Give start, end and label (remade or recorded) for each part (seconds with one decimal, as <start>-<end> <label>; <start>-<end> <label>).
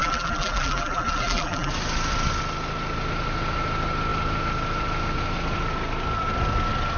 0.0-1.7 remade; 1.7-7.0 recorded